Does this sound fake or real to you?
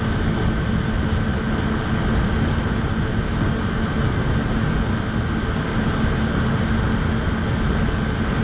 real